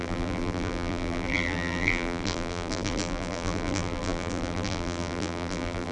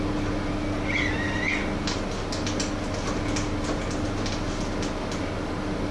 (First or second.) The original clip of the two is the second